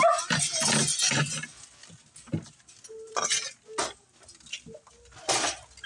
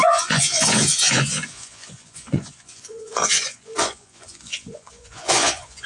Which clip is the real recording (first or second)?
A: first